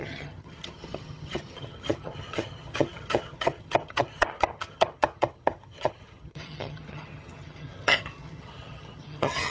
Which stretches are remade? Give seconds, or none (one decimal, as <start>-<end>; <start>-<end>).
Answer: 0.0-9.5